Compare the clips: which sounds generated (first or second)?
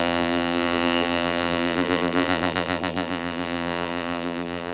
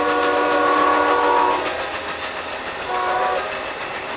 first